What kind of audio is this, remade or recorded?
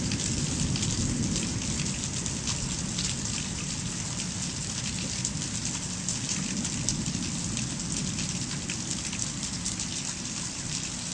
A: recorded